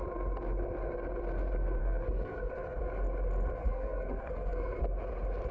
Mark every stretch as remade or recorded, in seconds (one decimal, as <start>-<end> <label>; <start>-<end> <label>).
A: 0.0-1.8 recorded; 1.8-2.8 remade; 2.8-3.6 recorded; 3.6-4.8 remade; 4.8-5.5 recorded